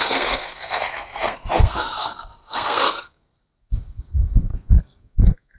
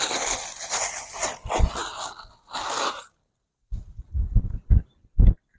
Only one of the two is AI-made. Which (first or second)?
first